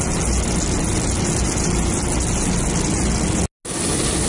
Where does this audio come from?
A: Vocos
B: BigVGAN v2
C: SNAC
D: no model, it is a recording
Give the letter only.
D